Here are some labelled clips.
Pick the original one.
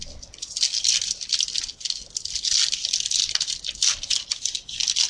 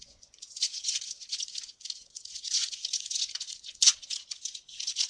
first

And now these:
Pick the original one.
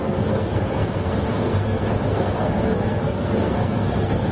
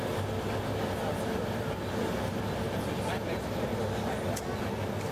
second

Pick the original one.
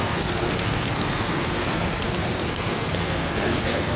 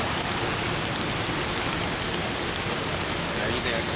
second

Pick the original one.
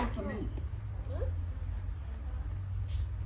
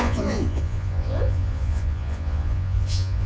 first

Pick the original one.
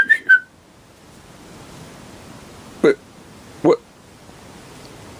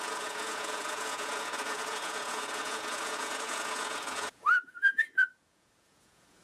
first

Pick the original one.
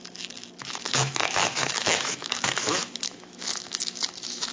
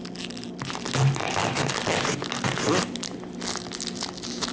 second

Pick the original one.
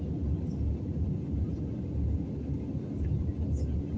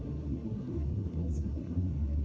first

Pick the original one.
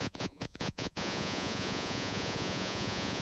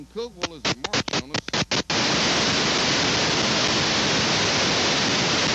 second